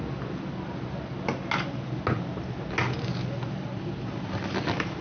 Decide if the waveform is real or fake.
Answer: real